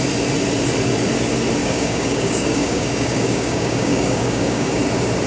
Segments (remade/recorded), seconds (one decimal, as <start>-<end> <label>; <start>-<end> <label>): 0.0-1.6 recorded; 1.6-4.8 remade; 4.8-5.3 recorded